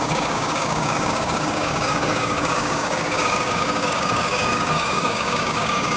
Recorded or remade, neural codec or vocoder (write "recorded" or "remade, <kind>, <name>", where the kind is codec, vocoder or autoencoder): remade, codec, DAC